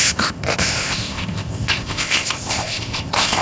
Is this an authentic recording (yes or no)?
no